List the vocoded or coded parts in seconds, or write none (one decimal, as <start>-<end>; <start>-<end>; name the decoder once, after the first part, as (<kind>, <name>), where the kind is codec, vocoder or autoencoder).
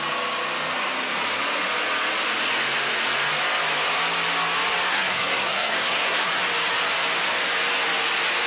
4.9-6.4 (codec, SNAC)